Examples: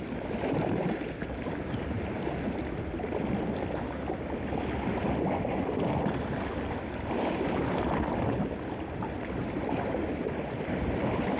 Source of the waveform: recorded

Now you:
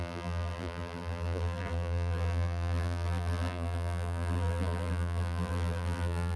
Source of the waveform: remade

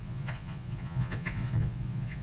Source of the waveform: remade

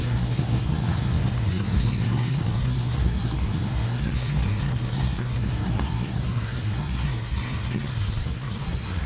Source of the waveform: remade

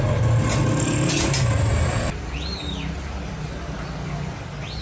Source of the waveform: recorded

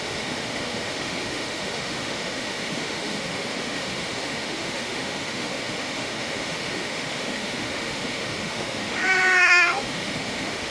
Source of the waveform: remade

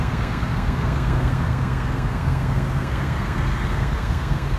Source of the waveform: remade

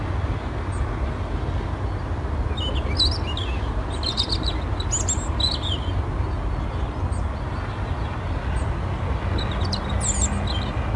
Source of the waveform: recorded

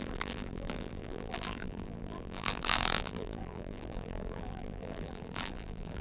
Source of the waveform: remade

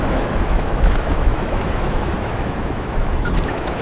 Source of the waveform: remade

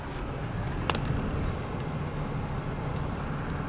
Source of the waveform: recorded